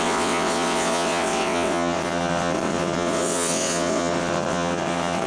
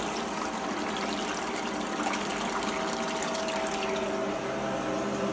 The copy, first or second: first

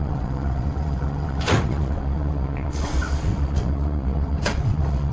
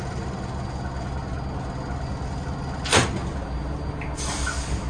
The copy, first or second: first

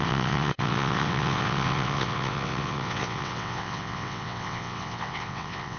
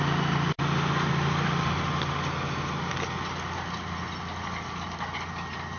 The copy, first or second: first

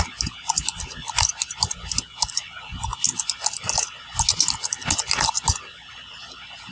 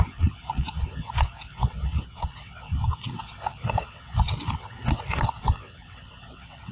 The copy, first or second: second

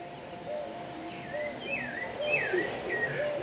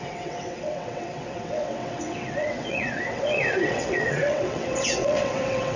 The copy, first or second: second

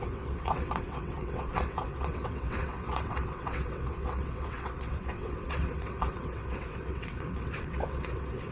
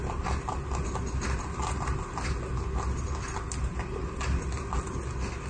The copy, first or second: first